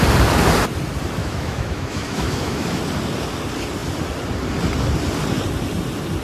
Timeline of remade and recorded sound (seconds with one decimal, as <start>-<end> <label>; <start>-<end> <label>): 0.0-1.2 recorded; 1.2-2.8 remade; 2.8-6.2 recorded